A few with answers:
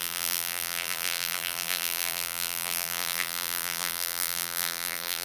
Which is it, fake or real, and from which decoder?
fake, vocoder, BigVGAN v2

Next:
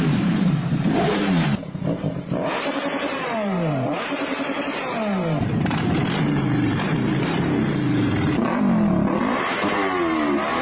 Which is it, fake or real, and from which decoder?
fake, vocoder, BigVGAN v2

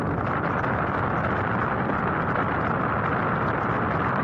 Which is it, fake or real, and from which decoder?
real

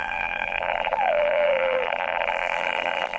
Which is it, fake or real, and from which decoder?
fake, vocoder, BigVGAN v2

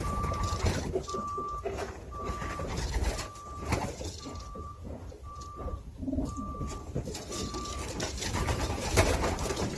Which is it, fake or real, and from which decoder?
fake, vocoder, BigVGAN v2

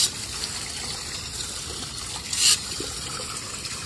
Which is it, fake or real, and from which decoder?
fake, vocoder, BigVGAN v2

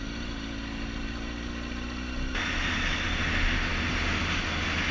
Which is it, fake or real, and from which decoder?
real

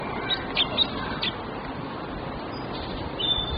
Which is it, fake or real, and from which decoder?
real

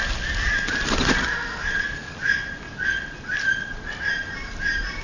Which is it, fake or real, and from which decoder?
real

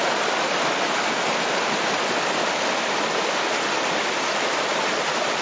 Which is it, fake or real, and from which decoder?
real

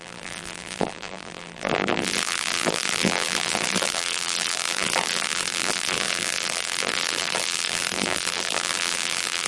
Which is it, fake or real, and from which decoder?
fake, vocoder, BigVGAN v2